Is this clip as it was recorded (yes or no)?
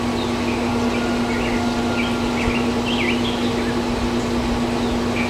yes